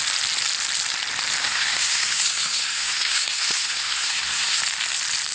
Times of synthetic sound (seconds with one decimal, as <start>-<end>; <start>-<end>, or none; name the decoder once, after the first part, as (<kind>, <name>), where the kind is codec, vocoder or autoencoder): 1.4-4.6 (codec, SNAC)